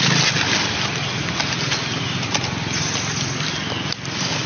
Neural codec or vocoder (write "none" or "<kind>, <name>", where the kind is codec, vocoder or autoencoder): none